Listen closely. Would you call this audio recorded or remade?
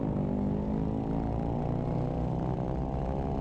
recorded